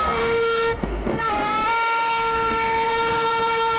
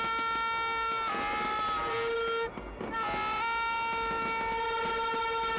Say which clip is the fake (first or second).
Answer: first